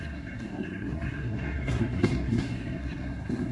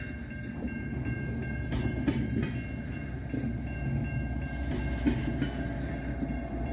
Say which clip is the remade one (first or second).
first